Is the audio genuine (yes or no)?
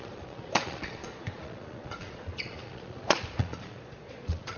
no